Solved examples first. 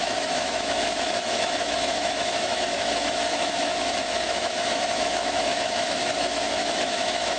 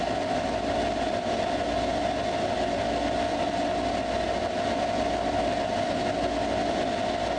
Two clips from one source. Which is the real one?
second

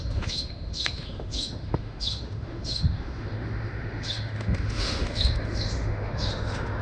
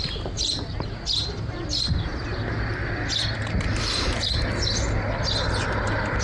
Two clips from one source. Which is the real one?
second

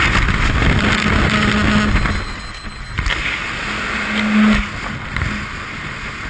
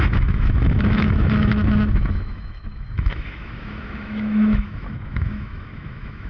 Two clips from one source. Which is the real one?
first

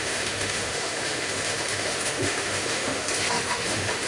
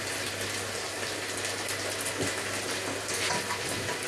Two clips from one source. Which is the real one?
second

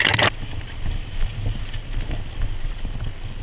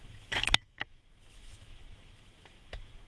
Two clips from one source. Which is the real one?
first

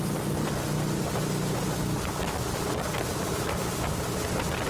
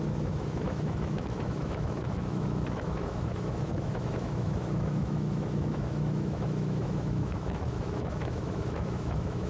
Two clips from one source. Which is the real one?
first